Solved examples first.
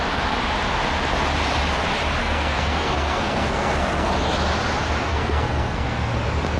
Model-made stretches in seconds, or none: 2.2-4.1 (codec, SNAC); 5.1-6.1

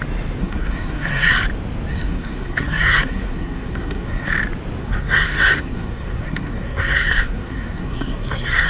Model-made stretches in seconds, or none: 0.4-1.3 (codec, SNAC); 1.9-4.3; 4.8-8.7

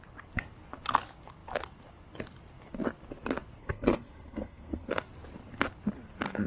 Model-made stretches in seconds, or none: 3.6-4.9 (codec, SNAC)

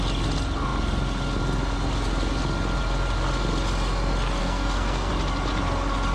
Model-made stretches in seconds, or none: 4.4-5.1 (codec, SNAC)

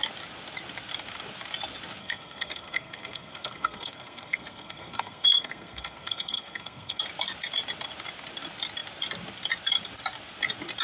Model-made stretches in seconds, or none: 2.0-7.0 (codec, SNAC)

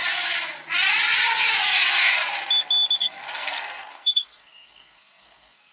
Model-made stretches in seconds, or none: 3.0-5.7 (codec, SNAC)

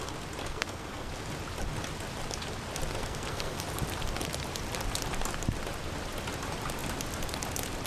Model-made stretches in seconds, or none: 0.4-1.1 (codec, SNAC); 3.0-3.6

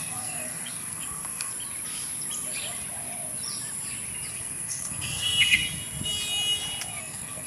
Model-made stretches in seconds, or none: 0.0-1.5 (codec, SNAC); 4.3-5.6; 7.0-7.5